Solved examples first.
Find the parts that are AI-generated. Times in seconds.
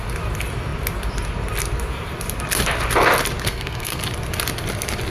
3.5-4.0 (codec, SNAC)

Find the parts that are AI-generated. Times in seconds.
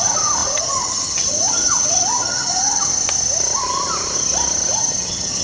0.0-2.9 (vocoder, HiFi-GAN); 4.7-5.4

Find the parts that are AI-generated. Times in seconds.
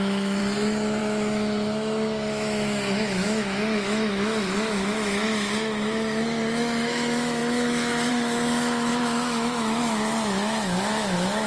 0.0-0.4 (autoencoder, DAC-VAE); 1.0-11.5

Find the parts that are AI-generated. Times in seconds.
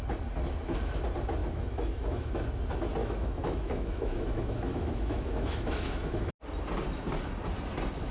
1.4-2.3 (autoencoder, DAC-VAE); 3.0-6.3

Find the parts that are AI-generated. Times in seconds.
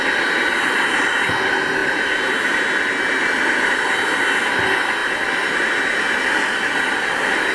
none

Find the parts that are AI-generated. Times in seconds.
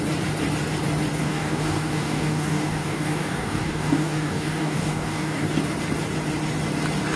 1.2-5.5 (codec, DAC)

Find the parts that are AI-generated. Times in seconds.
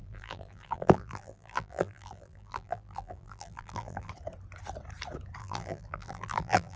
0.0-4.1 (vocoder, BigVGAN v2); 5.4-6.8